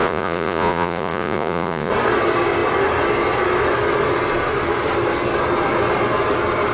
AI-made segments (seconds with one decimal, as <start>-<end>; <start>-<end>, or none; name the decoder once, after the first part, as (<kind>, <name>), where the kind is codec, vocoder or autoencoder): 0.0-1.9 (vocoder, Vocos)

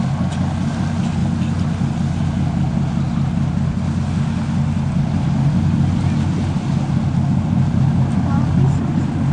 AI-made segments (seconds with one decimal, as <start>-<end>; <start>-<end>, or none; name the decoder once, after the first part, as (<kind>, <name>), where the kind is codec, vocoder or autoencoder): none